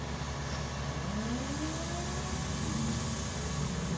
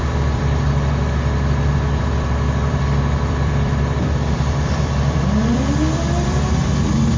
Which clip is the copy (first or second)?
second